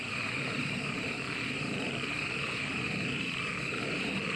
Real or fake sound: fake